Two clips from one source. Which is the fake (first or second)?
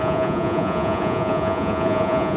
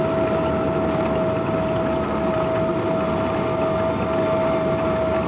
first